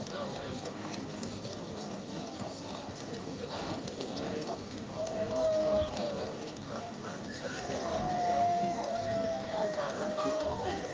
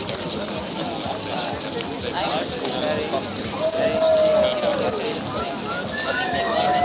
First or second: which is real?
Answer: second